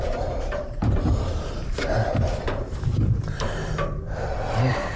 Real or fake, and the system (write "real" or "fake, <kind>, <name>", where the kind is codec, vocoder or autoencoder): fake, vocoder, BigVGAN v2